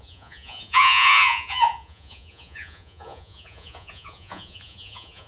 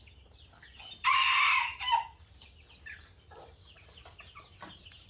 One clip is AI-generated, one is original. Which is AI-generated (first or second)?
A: first